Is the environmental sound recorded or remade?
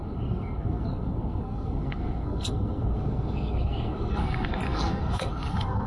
remade